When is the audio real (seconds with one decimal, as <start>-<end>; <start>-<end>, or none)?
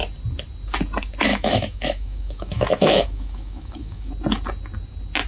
0.0-1.3; 4.1-5.3